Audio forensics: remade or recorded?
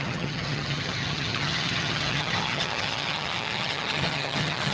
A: remade